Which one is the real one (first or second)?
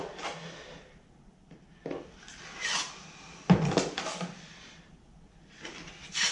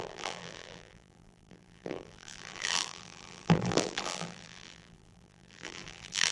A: first